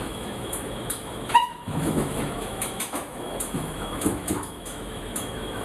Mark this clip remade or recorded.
remade